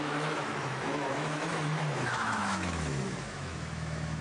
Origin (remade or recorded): remade